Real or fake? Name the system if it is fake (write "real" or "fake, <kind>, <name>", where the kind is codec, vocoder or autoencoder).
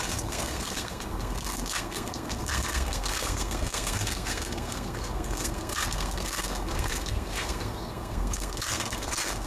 fake, codec, SNAC